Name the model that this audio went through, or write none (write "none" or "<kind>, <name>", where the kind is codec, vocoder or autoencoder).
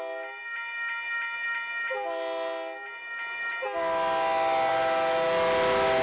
none